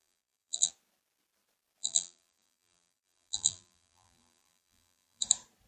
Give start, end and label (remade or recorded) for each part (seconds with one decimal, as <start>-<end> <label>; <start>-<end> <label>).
0.0-0.7 remade; 0.7-1.8 recorded; 1.8-5.2 remade; 5.2-5.7 recorded